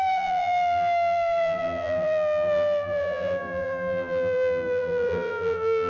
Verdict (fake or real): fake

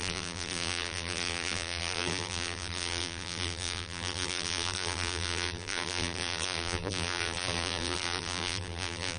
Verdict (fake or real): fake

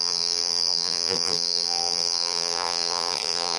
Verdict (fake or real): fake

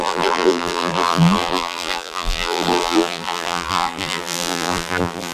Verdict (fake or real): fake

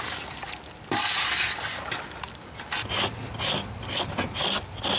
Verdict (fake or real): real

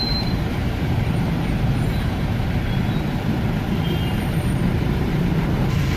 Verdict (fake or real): fake